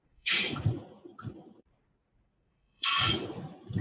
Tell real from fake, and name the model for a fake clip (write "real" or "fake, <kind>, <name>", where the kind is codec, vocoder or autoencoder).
fake, vocoder, Vocos